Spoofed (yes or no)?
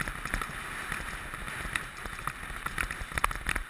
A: no